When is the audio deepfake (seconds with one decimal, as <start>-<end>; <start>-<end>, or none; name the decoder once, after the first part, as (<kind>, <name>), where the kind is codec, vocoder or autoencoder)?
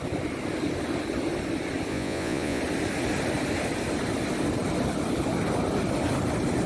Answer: 1.9-2.6 (vocoder, Vocos)